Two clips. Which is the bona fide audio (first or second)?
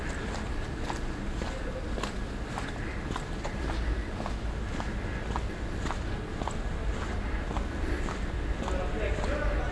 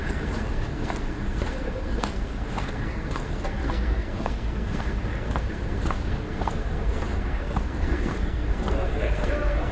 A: first